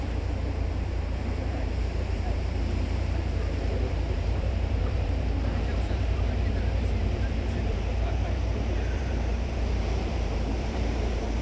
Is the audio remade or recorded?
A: remade